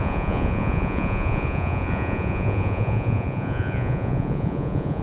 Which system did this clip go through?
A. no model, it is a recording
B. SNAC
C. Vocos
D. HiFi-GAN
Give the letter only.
C